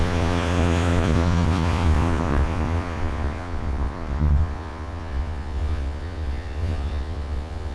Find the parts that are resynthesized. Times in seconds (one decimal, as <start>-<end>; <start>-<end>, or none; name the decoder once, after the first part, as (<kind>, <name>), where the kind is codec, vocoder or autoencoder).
0.0-7.7 (vocoder, Vocos)